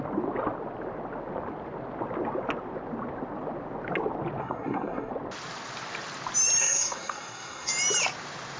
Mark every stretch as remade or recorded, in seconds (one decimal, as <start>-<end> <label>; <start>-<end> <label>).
0.0-4.4 recorded; 4.4-5.1 remade; 5.1-6.6 recorded; 6.6-7.7 remade; 7.7-8.6 recorded

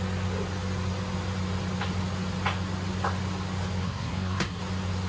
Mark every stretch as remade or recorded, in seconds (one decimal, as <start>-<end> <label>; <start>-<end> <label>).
0.0-3.8 recorded; 3.8-4.6 remade; 4.6-5.1 recorded

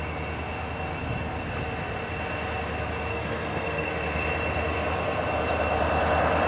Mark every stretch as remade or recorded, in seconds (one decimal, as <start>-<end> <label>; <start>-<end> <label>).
0.0-3.1 recorded; 3.1-3.9 remade; 3.9-6.5 recorded

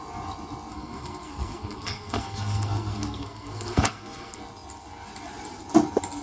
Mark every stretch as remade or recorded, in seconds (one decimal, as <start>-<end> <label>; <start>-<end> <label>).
0.0-0.7 recorded; 0.7-4.4 remade; 4.4-6.2 recorded